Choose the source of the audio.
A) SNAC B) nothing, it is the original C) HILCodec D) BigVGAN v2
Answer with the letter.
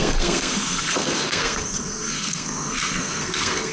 A